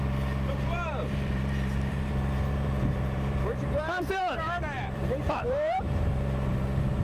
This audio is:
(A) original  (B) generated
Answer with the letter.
B